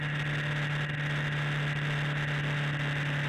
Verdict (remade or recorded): recorded